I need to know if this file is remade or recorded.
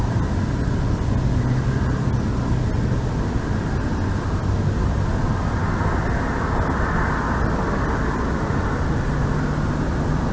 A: recorded